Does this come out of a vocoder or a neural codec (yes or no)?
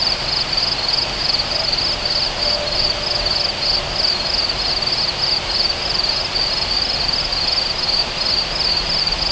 no